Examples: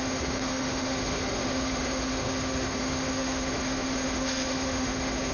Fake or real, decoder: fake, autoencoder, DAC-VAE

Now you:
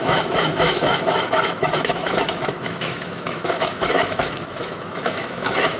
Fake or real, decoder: fake, autoencoder, DAC-VAE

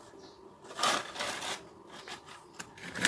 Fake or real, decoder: real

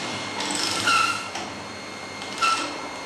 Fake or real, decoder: real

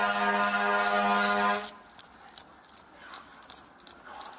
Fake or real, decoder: real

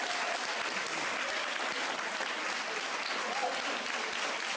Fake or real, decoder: real